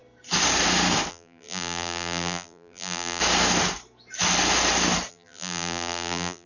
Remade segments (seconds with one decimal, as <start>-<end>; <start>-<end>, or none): 1.1-3.2; 5.1-6.5